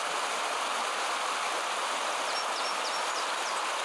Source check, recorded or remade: recorded